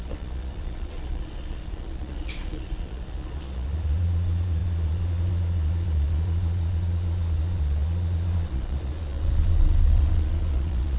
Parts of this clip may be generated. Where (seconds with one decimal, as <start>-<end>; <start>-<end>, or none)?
0.0-11.0